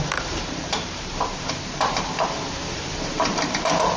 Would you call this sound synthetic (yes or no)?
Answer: yes